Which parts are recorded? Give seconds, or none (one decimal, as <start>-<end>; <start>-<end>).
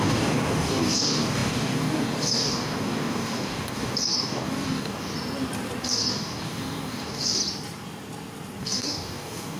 5.1-5.8; 7.4-8.6